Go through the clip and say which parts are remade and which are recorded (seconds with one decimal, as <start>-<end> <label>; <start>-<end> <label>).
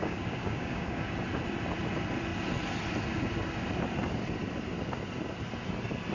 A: 0.0-1.1 remade; 1.1-6.1 recorded